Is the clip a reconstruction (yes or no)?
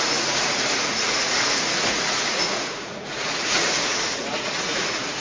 yes